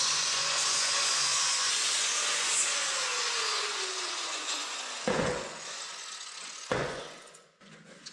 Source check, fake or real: fake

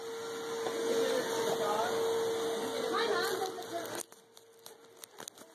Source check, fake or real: real